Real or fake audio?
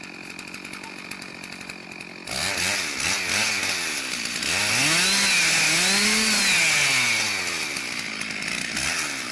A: real